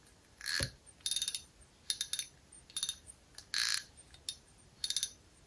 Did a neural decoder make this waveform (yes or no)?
no